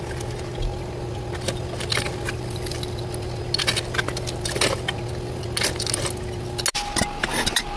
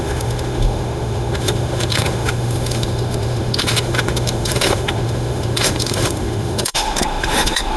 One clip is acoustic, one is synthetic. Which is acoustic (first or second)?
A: first